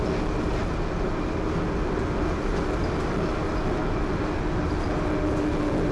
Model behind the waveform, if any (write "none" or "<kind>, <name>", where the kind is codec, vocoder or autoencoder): none